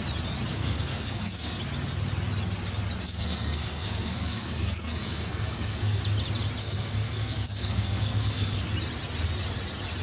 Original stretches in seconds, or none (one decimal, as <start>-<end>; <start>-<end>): 0.0-0.5; 1.6-3.0; 6.0-6.6; 8.6-10.0